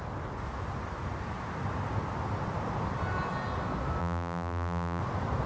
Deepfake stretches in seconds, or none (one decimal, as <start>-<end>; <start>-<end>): 4.0-5.0